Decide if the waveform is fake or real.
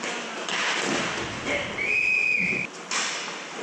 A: real